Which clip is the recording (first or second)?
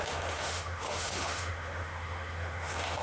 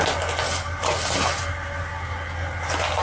second